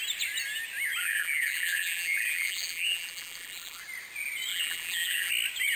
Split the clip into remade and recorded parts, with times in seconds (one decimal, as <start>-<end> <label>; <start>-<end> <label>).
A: 0.0-1.0 recorded; 1.0-3.8 remade; 3.8-4.5 recorded; 4.5-5.3 remade; 5.3-5.8 recorded